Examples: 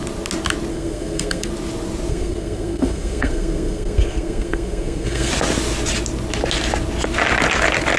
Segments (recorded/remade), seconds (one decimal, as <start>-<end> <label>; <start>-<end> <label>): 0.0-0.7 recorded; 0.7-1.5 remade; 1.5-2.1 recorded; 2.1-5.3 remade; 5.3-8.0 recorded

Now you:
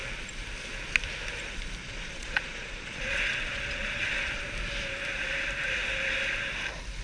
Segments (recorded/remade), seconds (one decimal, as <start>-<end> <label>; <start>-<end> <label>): 0.0-1.8 recorded; 1.8-4.4 remade; 4.4-7.0 recorded

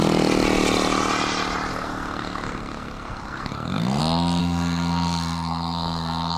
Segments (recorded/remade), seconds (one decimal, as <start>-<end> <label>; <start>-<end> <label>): 0.0-1.7 recorded; 1.7-4.0 remade; 4.0-4.4 recorded; 4.4-6.4 remade

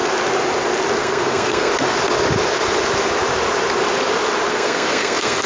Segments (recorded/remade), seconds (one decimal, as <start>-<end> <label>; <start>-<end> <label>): 0.0-1.0 recorded; 1.0-1.7 remade; 1.7-4.5 recorded; 4.5-5.5 remade

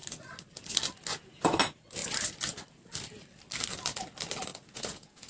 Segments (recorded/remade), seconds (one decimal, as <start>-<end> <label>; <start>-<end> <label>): 0.0-1.1 recorded; 1.1-1.6 remade; 1.6-4.5 recorded; 4.5-5.3 remade

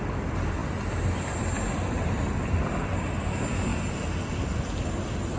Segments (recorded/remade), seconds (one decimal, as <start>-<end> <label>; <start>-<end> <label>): 0.0-5.4 recorded